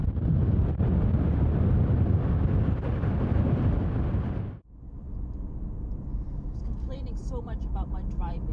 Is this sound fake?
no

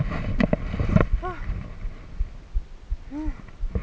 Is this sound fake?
no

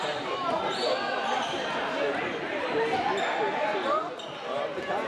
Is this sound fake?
no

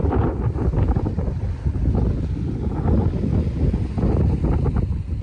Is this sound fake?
no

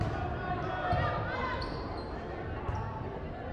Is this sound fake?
no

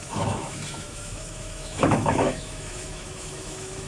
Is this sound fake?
yes